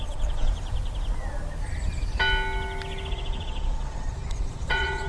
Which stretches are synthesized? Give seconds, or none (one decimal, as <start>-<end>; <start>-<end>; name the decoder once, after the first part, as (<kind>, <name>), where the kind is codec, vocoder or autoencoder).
0.0-0.5 (vocoder, Vocos); 3.1-5.1